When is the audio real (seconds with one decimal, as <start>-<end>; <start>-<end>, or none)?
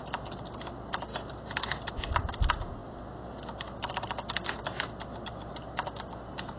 0.0-6.6